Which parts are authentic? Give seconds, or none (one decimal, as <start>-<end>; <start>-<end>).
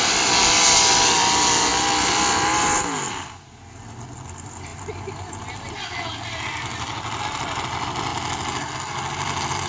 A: 0.0-9.7